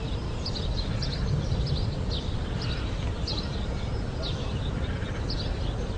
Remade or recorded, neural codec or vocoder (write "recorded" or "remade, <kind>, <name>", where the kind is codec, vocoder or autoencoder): recorded